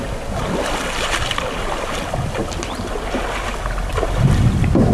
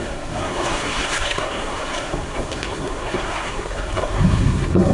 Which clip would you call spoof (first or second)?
second